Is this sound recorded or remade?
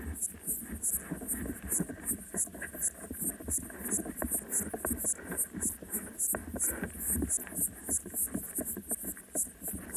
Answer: recorded